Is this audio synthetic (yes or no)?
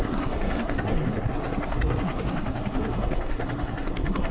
yes